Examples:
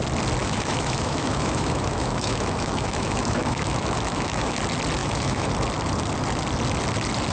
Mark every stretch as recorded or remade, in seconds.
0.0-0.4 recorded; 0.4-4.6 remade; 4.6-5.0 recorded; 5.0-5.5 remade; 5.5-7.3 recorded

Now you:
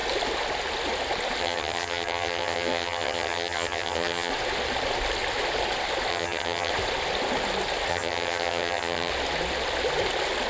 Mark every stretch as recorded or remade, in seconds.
0.0-1.4 recorded; 1.4-4.3 remade; 4.3-6.1 recorded; 6.1-6.7 remade; 6.7-7.9 recorded; 7.9-9.1 remade; 9.1-10.5 recorded

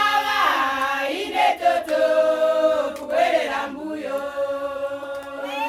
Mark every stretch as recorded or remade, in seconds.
0.0-5.7 recorded

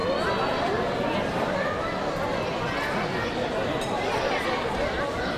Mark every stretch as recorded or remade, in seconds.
0.0-5.4 recorded

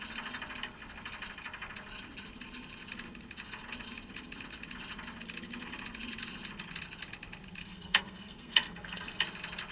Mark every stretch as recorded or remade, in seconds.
0.0-7.6 recorded; 7.6-9.2 remade; 9.2-9.7 recorded

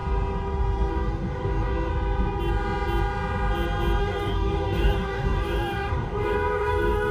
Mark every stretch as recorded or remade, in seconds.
0.0-0.9 recorded; 0.9-1.9 remade; 1.9-4.0 recorded; 4.0-7.1 remade